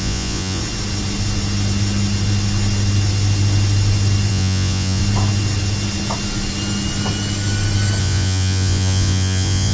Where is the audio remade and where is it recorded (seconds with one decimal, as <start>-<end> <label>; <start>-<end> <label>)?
0.0-0.6 remade; 0.6-4.3 recorded; 4.3-5.0 remade; 5.0-8.0 recorded; 8.0-9.7 remade